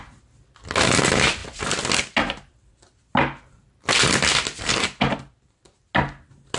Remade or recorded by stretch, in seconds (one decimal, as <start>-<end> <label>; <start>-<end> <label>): 0.0-6.6 recorded